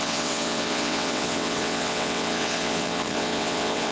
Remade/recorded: remade